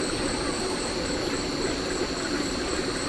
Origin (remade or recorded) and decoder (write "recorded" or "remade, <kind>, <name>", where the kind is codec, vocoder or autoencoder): remade, vocoder, BigVGAN v2